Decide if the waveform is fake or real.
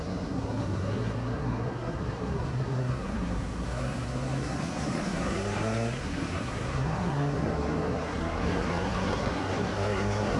fake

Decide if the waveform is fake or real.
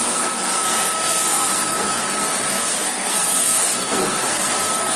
fake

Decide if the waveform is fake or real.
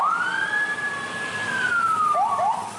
real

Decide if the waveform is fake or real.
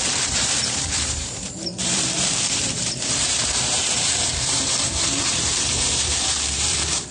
fake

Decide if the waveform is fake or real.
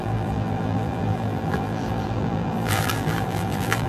fake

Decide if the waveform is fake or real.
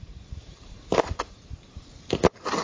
fake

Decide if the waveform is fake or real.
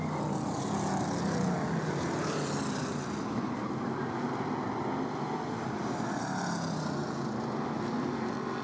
real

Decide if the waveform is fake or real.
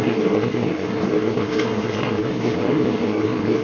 fake